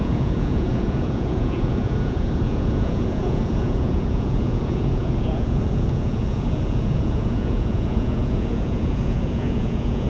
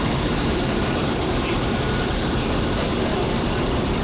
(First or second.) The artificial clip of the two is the first